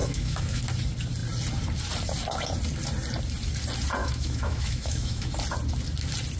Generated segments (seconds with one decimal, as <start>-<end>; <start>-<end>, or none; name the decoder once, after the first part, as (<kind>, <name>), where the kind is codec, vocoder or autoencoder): 0.0-0.6 (autoencoder, DAC-VAE); 4.0-5.3